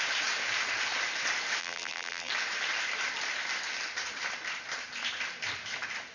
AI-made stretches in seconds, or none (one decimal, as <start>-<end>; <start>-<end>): 1.6-2.3